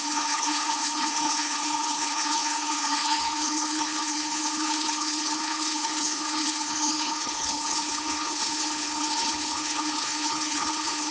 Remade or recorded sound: remade